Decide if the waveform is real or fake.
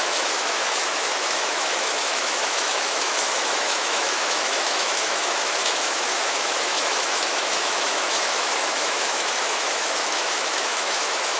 fake